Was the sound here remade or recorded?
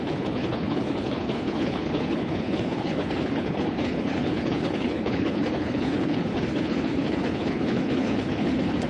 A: remade